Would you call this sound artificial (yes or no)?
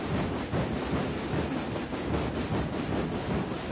no